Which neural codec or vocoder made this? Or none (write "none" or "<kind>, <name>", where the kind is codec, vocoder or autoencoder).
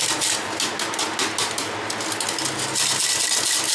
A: none